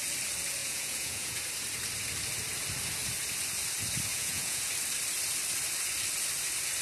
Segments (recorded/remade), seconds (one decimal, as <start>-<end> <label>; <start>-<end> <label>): 0.0-0.6 recorded; 0.6-1.4 remade; 1.4-4.1 recorded; 4.1-4.7 remade; 4.7-6.8 recorded